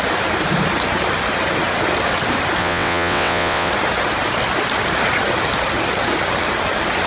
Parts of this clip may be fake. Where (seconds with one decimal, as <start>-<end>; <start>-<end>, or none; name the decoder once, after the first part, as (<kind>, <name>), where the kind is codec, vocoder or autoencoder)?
2.6-3.7 (vocoder, WaveNeXt)